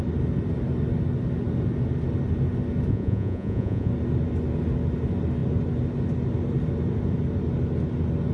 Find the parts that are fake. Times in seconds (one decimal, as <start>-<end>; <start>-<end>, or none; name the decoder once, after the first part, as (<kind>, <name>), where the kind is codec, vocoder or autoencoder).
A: 2.9-3.9 (vocoder, Vocos)